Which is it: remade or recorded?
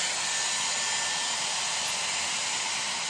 recorded